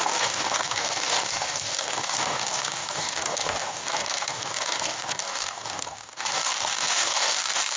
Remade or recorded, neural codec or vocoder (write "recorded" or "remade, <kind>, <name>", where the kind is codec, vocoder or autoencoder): remade, codec, DAC